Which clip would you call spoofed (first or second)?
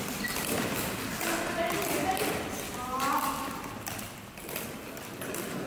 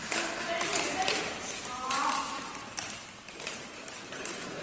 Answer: second